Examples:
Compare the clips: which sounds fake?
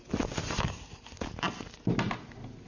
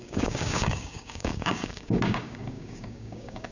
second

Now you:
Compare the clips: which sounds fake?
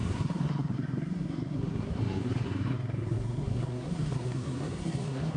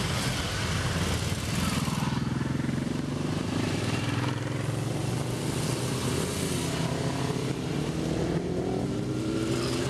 first